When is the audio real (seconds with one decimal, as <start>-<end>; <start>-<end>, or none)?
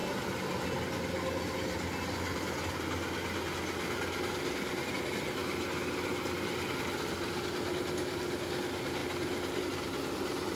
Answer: 0.0-10.6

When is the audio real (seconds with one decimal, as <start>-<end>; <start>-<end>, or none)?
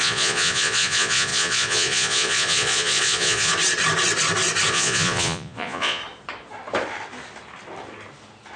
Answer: 3.5-4.7; 6.0-8.6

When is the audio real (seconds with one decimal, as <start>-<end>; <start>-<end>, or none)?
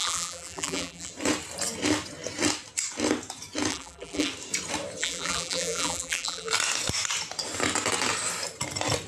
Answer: 1.1-3.7; 4.3-5.0; 6.5-9.1